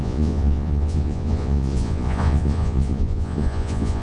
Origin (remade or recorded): remade